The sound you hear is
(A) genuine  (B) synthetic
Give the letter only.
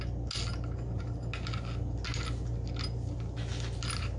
A